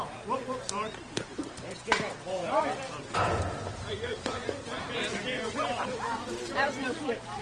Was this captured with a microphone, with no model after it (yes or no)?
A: no